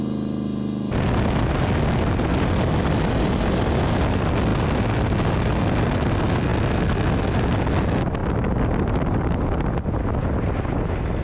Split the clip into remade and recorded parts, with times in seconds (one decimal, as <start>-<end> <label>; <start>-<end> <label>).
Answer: 0.0-11.2 recorded